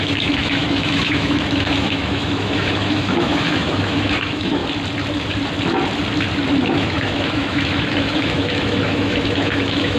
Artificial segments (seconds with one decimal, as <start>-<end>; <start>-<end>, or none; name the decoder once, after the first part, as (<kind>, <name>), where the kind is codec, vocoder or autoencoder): 0.0-4.6 (autoencoder, DAC-VAE); 6.7-10.0